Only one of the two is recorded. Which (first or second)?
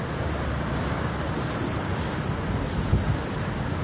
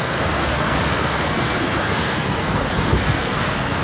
first